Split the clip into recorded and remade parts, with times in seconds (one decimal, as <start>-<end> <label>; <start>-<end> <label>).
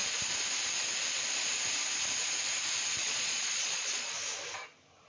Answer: 0.0-3.0 recorded; 3.0-4.1 remade; 4.1-5.1 recorded